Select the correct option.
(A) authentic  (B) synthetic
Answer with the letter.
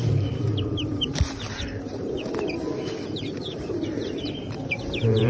B